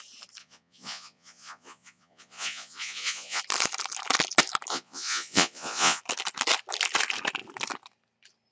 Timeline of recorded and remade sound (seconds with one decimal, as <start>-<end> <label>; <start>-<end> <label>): 0.0-0.4 recorded; 0.4-3.4 remade; 3.4-4.7 recorded; 4.7-6.0 remade; 6.0-8.5 recorded